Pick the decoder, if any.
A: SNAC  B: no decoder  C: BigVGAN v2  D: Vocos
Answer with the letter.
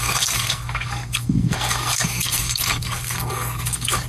A